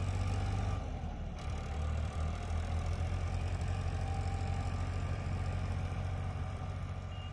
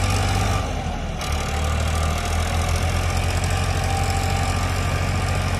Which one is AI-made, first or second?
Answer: first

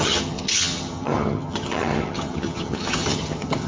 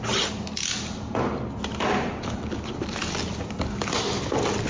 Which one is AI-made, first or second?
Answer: first